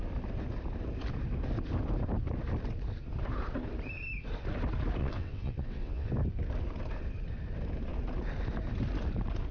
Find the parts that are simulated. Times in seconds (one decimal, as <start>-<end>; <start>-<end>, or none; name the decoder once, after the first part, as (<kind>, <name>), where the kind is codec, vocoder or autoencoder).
5.0-6.1 (vocoder, WaveNeXt)